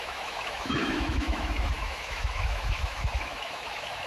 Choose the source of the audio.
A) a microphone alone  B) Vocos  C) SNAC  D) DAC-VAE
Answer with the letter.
D